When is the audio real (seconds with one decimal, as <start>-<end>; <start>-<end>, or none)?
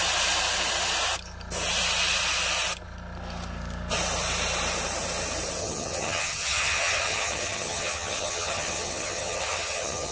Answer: 0.0-5.6